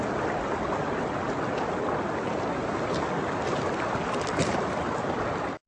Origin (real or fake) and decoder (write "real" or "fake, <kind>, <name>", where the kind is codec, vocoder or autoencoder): real